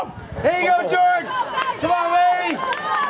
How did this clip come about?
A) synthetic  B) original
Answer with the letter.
B